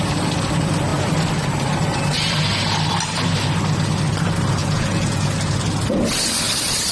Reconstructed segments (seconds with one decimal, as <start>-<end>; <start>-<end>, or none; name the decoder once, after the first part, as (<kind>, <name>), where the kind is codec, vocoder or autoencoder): 4.6-5.2 (vocoder, Vocos)